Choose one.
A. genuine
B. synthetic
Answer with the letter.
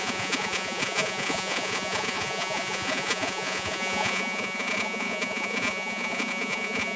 B